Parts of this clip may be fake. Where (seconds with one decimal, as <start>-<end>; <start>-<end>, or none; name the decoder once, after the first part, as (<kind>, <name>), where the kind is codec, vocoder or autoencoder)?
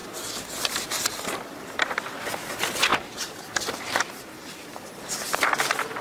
2.9-4.1 (vocoder, BigVGAN v2)